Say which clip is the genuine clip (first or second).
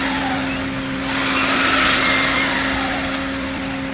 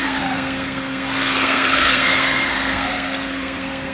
first